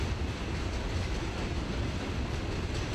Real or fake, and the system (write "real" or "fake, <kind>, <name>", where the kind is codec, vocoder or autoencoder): real